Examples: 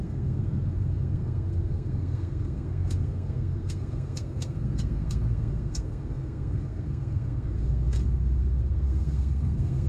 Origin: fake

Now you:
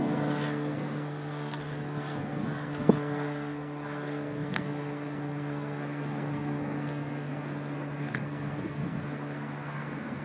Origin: fake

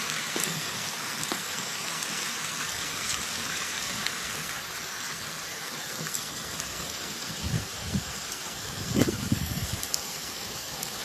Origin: fake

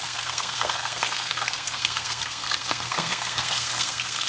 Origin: fake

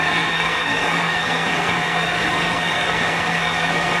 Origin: fake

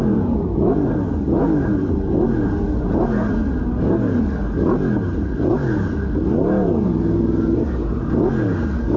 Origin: real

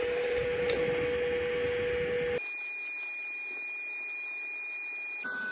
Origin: real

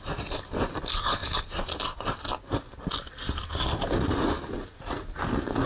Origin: real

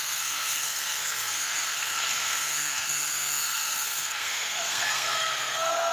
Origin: fake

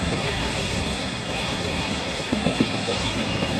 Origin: fake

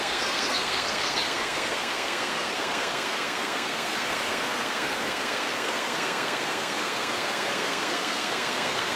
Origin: fake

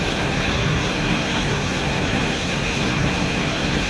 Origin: fake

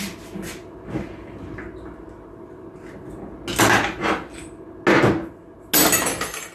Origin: real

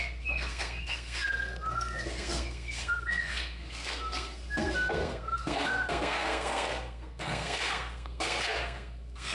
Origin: fake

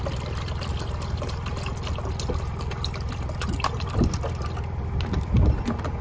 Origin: real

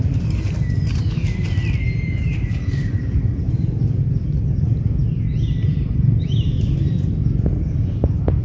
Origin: real